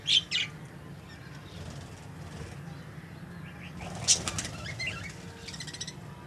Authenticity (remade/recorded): recorded